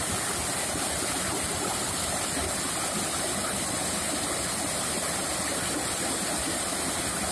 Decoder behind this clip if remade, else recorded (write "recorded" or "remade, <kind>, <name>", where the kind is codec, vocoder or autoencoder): recorded